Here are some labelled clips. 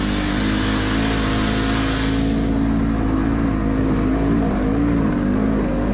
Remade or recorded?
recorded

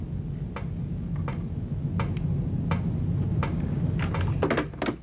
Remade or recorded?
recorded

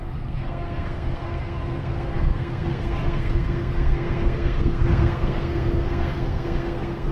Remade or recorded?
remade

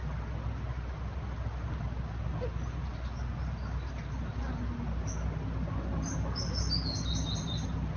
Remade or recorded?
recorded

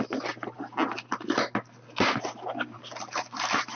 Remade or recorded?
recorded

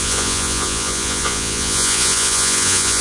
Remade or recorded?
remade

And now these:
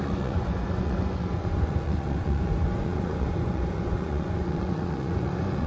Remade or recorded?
remade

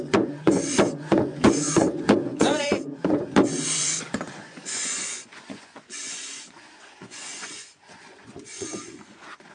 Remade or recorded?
remade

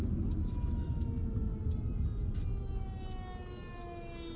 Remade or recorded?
recorded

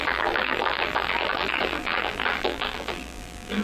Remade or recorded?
remade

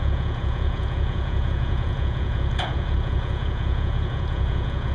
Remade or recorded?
remade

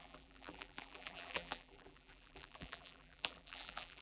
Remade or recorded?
remade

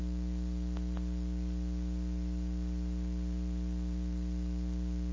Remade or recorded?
recorded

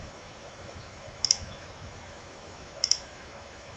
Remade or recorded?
remade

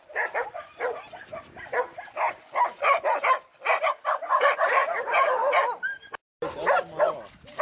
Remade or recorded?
recorded